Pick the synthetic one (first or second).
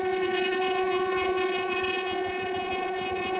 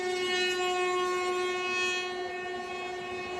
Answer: first